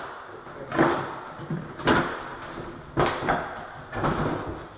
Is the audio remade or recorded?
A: recorded